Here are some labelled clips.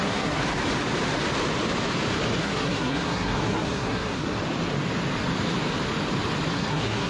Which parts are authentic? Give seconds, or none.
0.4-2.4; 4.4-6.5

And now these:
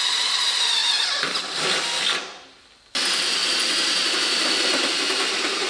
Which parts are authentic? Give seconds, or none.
0.0-5.7

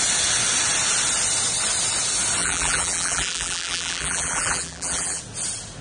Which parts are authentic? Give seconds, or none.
0.0-2.4; 5.2-5.8

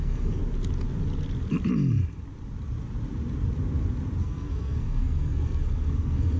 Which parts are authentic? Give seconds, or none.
0.4-4.2

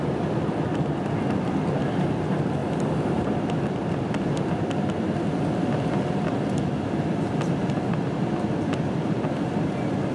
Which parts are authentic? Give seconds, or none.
0.0-10.1

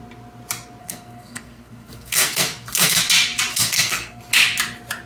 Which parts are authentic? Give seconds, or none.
0.0-0.8; 3.0-3.5; 4.2-5.1